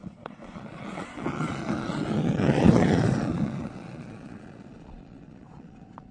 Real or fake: fake